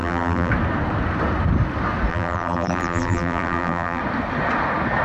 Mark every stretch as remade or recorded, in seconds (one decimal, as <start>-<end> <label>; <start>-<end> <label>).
0.0-0.5 remade; 0.5-2.1 recorded; 2.1-4.0 remade; 4.0-5.0 recorded